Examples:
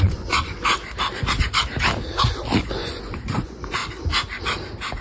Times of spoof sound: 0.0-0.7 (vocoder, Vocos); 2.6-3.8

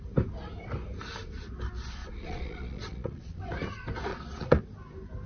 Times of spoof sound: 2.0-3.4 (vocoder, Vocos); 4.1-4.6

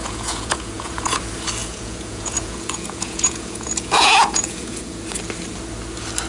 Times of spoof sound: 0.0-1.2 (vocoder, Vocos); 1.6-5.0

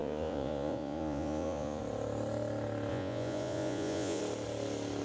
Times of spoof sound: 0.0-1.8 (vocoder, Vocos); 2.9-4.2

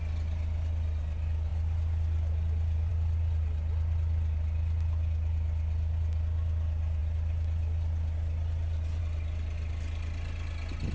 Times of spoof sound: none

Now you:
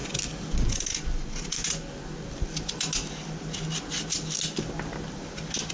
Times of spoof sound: none

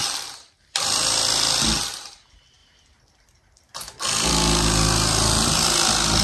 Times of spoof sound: none

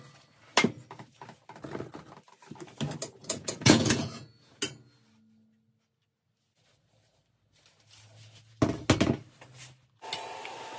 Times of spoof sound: 3.2-4.6 (vocoder, Vocos)